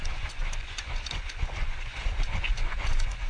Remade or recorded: remade